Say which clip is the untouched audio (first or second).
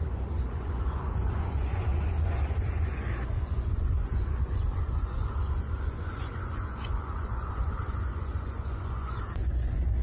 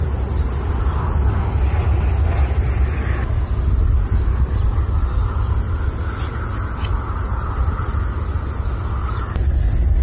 second